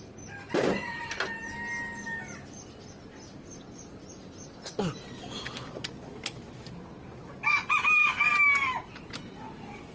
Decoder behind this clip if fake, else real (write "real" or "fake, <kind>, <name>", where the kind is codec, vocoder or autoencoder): real